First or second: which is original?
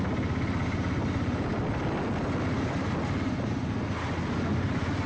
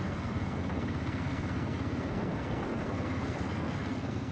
first